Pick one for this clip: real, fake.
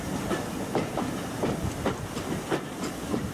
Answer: real